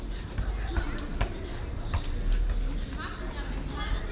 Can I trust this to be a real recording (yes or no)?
yes